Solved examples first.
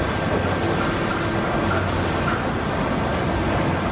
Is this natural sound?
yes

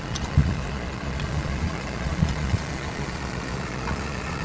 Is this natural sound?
no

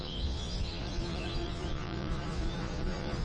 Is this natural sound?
no